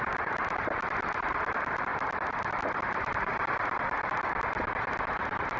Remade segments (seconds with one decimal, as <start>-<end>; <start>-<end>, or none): 0.0-3.3